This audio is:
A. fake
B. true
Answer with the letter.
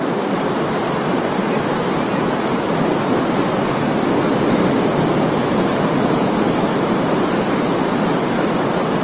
B